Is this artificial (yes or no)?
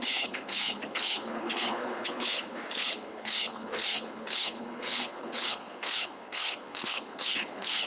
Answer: yes